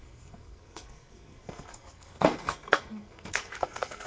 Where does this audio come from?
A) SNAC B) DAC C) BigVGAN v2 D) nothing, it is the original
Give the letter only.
A